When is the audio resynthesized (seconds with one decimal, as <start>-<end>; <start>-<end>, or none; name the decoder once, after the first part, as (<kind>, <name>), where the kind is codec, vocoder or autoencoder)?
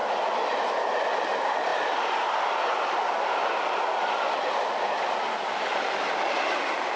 none